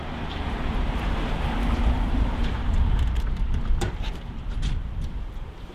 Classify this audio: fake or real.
fake